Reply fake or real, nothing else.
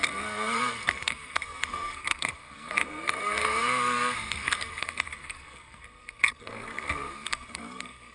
fake